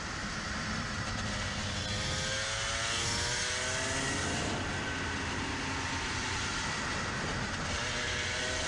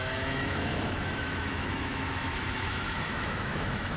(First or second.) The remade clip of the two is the second